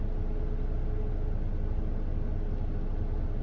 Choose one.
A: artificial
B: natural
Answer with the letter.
B